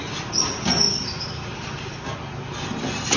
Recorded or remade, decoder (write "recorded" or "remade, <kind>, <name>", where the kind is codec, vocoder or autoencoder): recorded